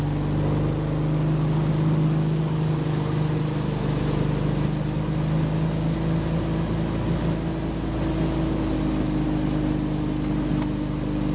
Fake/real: real